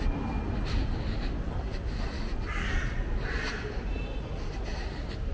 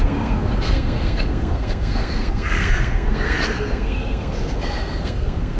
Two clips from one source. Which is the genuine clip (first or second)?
first